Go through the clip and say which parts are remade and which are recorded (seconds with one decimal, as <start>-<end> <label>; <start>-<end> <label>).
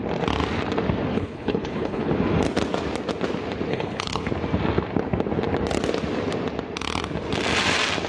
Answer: 0.0-1.1 recorded; 1.1-2.1 remade; 2.1-3.7 recorded; 3.7-4.3 remade; 4.3-8.1 recorded